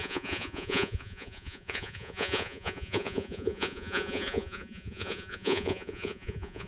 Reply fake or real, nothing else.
fake